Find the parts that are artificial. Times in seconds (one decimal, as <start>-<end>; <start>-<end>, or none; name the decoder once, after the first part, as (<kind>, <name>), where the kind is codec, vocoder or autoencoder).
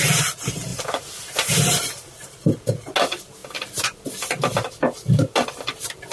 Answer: none